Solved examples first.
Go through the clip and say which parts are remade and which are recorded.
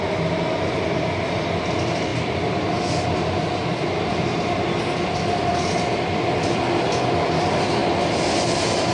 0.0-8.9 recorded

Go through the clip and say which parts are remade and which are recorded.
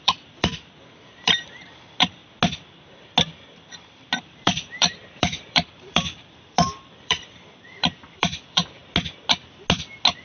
0.0-2.2 remade; 2.2-4.2 recorded; 4.2-8.8 remade; 8.8-10.2 recorded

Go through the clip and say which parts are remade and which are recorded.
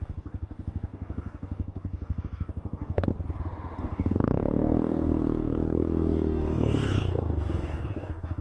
0.0-3.1 remade; 3.1-3.8 recorded; 3.8-8.4 remade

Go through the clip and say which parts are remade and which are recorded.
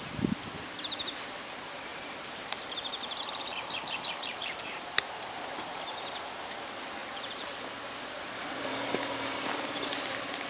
0.0-1.9 recorded; 1.9-4.8 remade; 4.8-7.0 recorded; 7.0-7.6 remade; 7.6-10.5 recorded